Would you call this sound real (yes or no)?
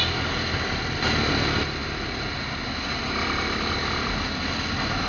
yes